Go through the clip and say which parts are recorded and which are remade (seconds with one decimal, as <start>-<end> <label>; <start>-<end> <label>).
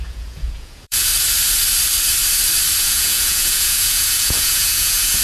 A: 0.0-1.1 remade; 1.1-2.8 recorded; 2.8-5.2 remade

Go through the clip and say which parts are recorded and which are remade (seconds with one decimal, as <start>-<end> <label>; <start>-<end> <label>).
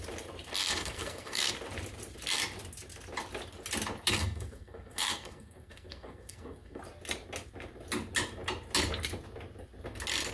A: 0.0-0.6 recorded; 0.6-1.5 remade; 1.5-4.1 recorded; 4.1-6.8 remade; 6.8-10.3 recorded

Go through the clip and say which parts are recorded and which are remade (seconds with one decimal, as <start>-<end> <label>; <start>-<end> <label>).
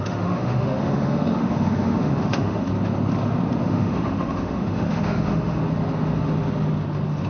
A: 0.0-2.7 remade; 2.7-3.6 recorded; 3.6-5.6 remade; 5.6-7.3 recorded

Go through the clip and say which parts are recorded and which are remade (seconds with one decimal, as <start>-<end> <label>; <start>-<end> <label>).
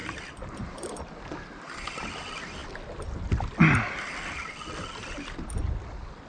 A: 0.0-6.3 recorded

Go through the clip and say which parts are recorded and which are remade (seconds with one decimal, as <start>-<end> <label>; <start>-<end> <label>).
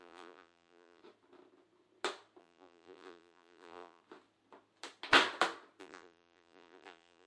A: 0.0-1.0 remade; 1.0-2.4 recorded; 2.4-4.0 remade; 4.0-5.8 recorded; 5.8-7.3 remade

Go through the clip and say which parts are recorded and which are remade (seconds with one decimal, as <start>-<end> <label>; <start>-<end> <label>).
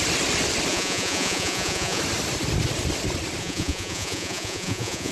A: 0.0-0.7 recorded; 0.7-2.0 remade; 2.0-3.4 recorded; 3.4-5.1 remade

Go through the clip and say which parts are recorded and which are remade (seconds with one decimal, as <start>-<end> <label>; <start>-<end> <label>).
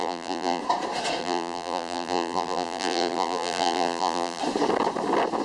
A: 0.0-0.6 remade; 0.6-1.2 recorded; 1.2-4.4 remade; 4.4-5.4 recorded